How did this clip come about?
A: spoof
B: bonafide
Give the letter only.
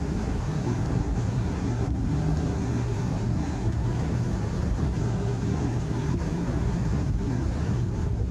A